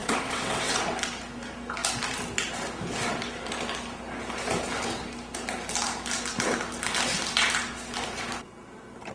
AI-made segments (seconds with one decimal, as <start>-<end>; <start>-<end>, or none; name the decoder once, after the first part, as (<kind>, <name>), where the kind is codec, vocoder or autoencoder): 0.0-0.7 (vocoder, WaveNeXt)

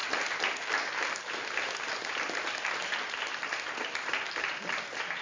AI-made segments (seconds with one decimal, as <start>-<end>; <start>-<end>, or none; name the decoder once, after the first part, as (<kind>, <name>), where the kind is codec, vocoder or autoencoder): none

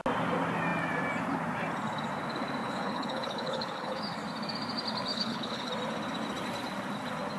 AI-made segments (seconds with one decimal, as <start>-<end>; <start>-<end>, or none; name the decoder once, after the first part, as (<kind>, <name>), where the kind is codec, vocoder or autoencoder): 2.6-4.0 (codec, HILCodec); 5.1-5.7

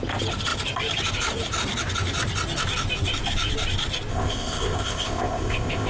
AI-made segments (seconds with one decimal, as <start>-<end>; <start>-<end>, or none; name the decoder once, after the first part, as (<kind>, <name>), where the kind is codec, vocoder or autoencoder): 4.1-5.9 (codec, ZipCodec)